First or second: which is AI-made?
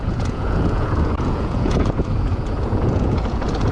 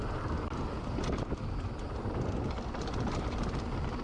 first